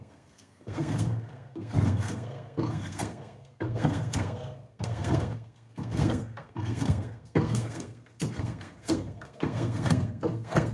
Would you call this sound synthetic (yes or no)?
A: yes